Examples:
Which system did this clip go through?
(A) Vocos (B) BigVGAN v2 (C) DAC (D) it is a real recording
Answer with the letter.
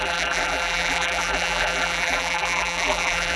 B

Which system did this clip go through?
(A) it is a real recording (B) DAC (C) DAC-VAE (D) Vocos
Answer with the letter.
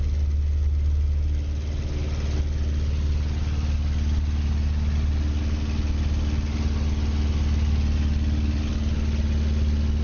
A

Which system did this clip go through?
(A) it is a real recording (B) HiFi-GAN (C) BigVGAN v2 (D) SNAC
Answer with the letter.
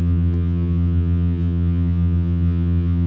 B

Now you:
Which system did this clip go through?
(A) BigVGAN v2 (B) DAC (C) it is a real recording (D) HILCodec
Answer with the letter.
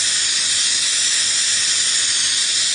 C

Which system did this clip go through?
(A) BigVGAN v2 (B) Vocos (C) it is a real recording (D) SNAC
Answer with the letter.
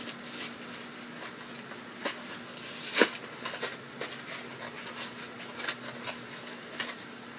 C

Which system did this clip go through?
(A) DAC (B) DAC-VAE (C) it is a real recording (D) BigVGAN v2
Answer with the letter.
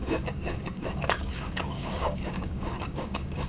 A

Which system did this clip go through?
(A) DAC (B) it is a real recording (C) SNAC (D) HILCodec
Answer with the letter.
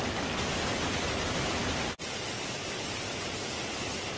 B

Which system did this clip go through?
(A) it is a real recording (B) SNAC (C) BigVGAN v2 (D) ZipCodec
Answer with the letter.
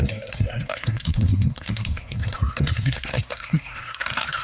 B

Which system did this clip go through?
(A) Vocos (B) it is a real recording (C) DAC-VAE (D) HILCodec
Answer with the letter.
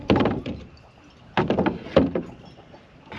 B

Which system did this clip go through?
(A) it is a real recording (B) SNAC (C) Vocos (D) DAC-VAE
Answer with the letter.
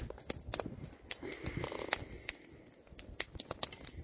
A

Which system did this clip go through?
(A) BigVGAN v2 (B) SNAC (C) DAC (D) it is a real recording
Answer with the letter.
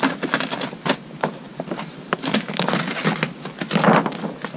D